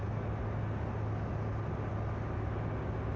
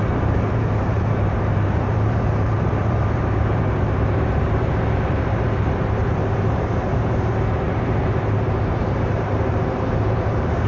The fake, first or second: second